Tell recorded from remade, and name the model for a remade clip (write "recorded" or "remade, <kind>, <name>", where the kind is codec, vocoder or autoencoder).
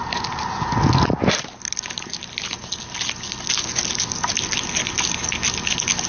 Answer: recorded